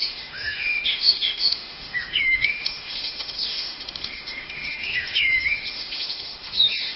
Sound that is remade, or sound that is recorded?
remade